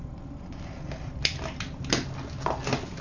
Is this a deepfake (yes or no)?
no